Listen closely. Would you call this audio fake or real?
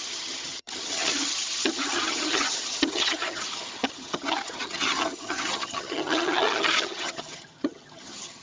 fake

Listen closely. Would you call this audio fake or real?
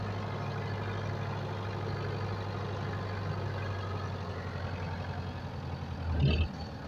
real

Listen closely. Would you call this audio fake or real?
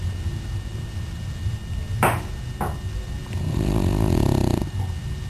real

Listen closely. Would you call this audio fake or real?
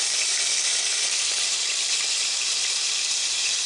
fake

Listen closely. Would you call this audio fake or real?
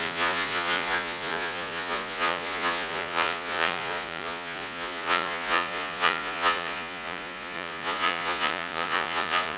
fake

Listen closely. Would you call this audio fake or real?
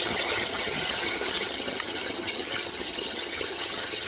fake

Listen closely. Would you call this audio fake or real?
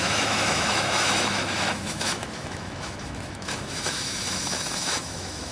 fake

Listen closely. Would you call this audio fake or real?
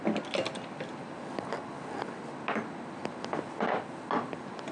real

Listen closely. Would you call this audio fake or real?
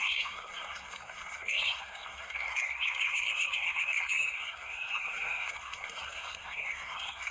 fake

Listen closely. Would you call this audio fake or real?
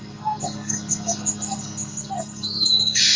fake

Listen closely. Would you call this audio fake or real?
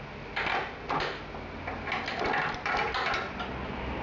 real